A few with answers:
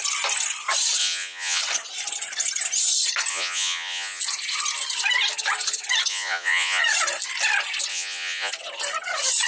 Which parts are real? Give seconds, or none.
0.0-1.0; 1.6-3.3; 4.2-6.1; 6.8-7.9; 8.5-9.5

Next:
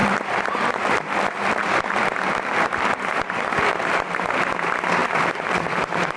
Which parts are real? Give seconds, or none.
0.0-1.6; 3.8-5.0

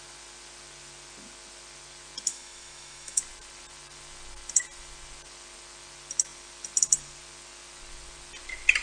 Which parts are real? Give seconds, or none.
0.0-2.3; 3.2-8.8